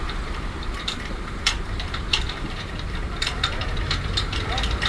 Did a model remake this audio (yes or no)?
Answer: yes